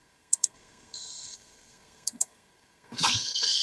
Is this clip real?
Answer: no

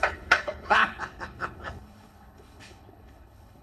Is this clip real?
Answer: no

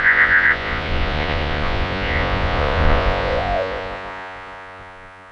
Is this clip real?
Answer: no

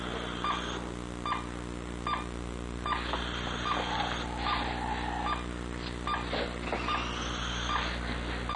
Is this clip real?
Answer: yes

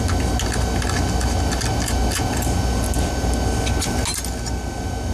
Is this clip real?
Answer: yes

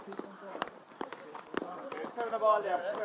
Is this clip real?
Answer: no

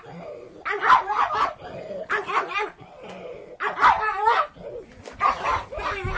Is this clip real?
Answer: yes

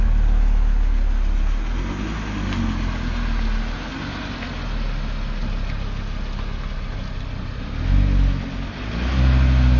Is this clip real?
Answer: yes